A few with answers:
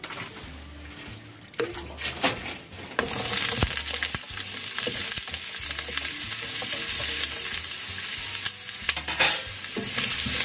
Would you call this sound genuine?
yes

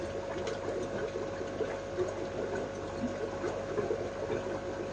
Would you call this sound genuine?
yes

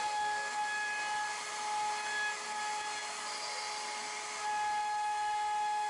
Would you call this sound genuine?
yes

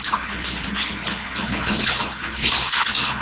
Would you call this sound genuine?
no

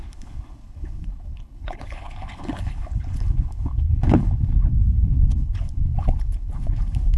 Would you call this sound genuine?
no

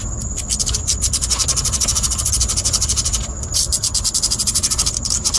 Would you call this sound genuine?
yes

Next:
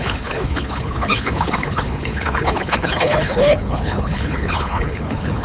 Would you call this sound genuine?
no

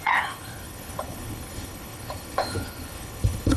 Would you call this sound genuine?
no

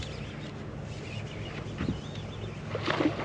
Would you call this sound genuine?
yes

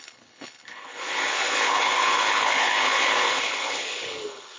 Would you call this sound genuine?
no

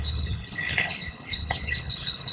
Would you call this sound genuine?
no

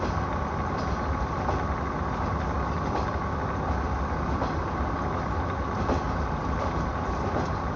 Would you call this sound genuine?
yes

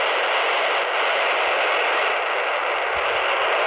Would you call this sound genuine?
yes